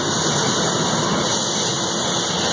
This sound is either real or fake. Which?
real